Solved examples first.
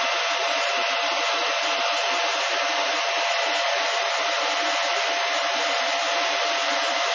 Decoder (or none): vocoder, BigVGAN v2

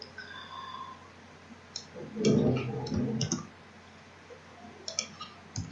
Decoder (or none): none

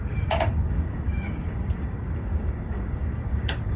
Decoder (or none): codec, DAC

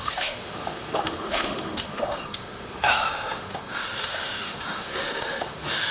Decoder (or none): autoencoder, DAC-VAE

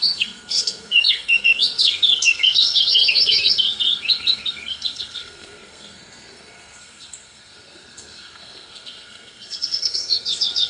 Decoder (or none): codec, SNAC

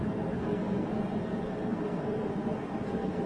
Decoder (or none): codec, SNAC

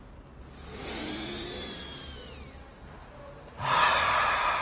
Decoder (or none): none